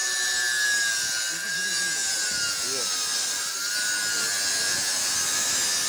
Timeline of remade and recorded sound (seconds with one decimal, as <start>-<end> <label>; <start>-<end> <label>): 0.0-5.9 recorded